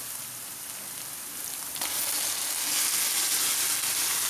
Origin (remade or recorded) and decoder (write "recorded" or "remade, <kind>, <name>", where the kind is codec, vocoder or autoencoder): recorded